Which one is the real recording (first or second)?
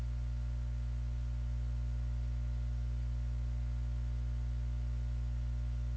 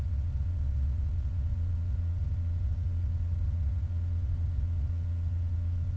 first